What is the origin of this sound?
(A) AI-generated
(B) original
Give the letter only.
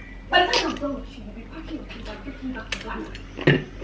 B